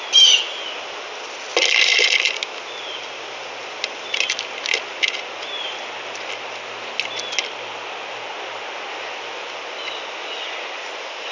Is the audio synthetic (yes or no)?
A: no